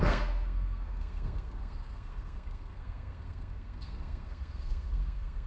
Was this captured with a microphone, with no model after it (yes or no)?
no